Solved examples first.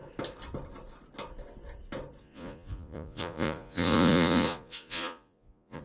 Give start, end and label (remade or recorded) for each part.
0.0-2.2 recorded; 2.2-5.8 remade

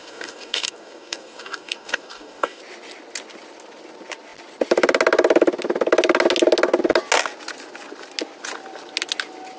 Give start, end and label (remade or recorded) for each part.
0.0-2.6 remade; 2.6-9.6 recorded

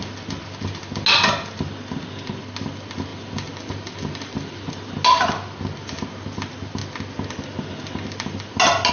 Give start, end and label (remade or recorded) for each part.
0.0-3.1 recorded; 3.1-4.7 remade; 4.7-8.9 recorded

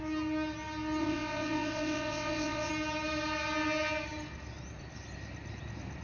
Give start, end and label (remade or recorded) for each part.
0.0-1.0 recorded; 1.0-2.7 remade; 2.7-6.0 recorded